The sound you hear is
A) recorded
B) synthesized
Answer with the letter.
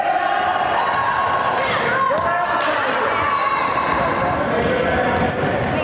A